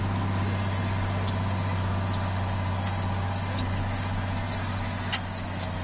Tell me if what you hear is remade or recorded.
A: recorded